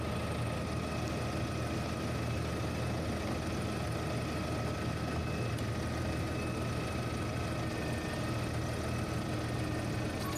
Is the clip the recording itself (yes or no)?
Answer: yes